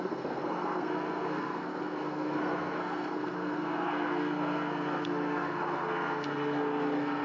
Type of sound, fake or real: fake